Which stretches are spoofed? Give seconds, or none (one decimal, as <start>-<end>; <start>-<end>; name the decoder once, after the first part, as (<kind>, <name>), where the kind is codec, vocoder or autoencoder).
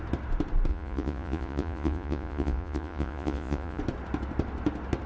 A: 0.7-3.8 (vocoder, Vocos)